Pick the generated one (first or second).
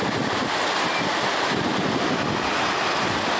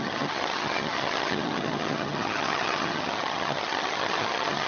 second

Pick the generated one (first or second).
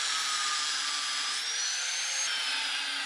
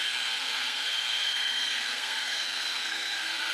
second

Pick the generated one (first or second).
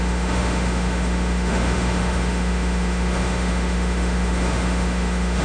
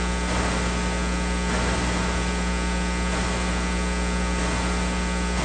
first